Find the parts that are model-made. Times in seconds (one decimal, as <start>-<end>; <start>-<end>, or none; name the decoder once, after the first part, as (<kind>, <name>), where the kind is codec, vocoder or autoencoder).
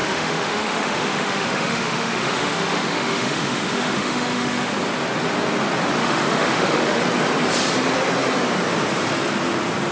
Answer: 0.0-4.7 (autoencoder, DAC-VAE); 6.0-7.0